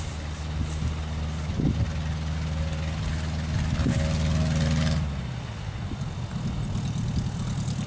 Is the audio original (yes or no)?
yes